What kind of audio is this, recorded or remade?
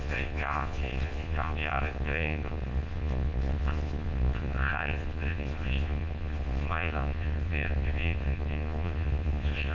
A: remade